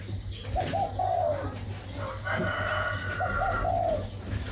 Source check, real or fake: real